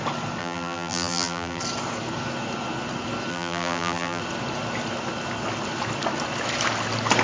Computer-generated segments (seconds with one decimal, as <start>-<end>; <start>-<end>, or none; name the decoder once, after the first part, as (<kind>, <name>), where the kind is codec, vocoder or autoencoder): 0.4-1.6 (vocoder, BigVGAN v2); 3.3-4.2